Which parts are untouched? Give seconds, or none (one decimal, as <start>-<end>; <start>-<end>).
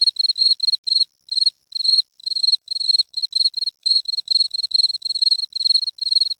0.0-2.2; 3.2-3.8; 5.4-6.4